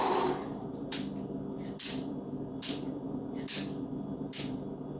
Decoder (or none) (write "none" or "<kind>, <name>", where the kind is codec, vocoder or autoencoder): none